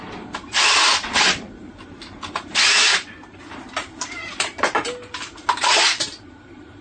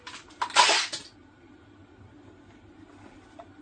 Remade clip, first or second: first